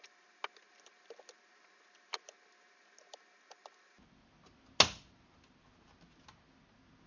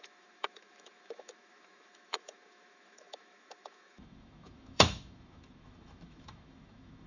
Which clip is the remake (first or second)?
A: second